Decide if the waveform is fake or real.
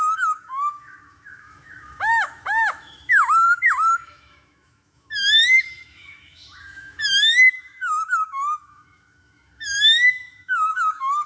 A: fake